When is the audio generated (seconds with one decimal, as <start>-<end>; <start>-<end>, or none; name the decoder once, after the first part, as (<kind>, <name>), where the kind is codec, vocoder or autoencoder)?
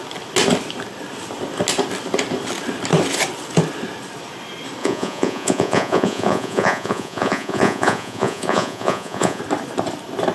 4.8-9.4 (vocoder, Vocos)